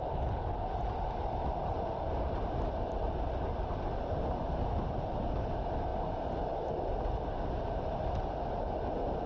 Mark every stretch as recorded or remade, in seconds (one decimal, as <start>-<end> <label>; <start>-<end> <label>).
0.0-1.6 recorded; 1.6-4.5 remade; 4.5-9.3 recorded